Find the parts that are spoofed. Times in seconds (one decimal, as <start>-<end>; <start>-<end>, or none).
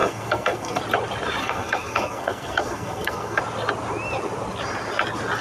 0.0-0.8; 1.4-3.4